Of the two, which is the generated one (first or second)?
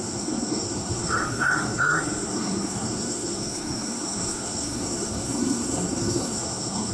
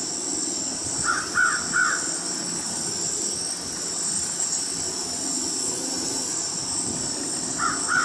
first